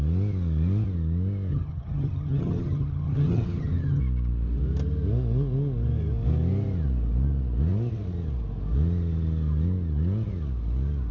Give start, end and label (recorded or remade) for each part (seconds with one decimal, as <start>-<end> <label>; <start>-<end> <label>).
0.0-1.5 recorded; 1.5-4.0 remade; 4.0-11.1 recorded